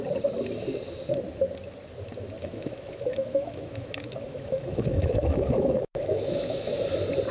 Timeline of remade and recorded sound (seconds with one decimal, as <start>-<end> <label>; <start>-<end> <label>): 0.0-2.4 recorded; 2.4-6.8 remade; 6.8-7.3 recorded